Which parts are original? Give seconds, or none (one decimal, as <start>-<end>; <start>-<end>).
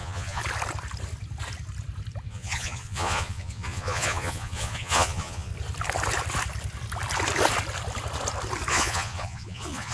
0.4-2.3; 5.5-8.7